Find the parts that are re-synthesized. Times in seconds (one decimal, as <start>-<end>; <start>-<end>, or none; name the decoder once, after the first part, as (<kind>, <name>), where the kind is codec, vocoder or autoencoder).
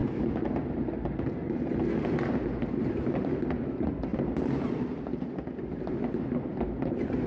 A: 2.9-6.5 (vocoder, BigVGAN v2)